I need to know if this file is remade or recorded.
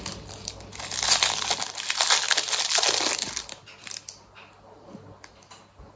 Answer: recorded